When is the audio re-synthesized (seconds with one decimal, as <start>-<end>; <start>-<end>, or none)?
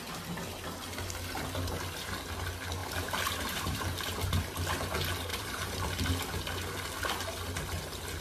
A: 2.8-4.4; 5.3-6.1